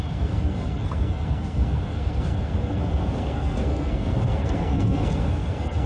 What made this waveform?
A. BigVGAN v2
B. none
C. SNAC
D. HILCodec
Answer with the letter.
C